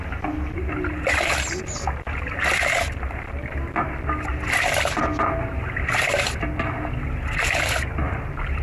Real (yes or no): yes